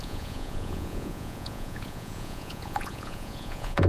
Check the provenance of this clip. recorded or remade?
remade